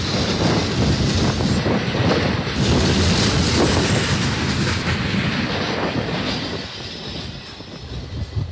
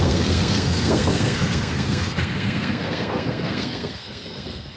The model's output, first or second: second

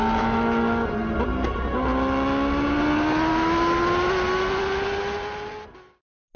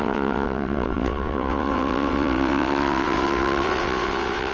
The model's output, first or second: second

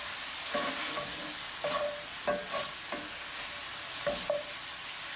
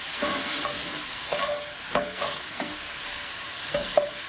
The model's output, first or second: second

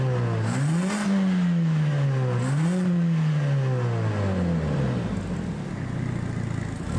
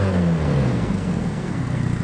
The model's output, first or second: second